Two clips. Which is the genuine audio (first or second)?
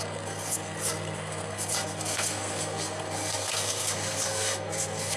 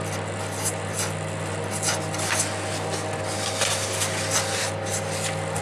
second